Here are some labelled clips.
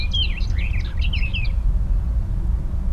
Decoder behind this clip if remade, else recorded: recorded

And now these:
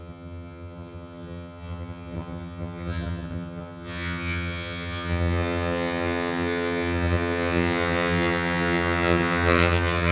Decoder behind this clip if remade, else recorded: remade, vocoder, HiFi-GAN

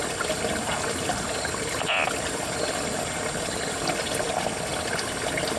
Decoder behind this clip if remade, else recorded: recorded